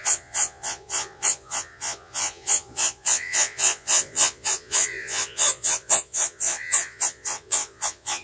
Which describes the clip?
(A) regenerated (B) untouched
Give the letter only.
A